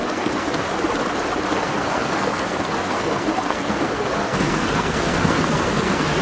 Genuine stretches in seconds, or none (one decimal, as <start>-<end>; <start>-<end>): 0.7-1.5